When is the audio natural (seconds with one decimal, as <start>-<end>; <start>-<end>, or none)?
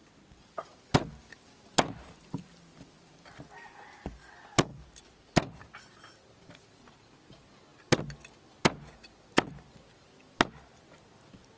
3.0-4.7; 5.6-11.6